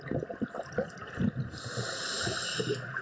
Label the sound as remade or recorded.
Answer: recorded